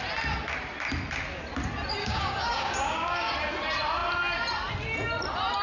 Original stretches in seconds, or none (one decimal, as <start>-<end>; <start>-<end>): 0.0-2.0; 3.3-5.6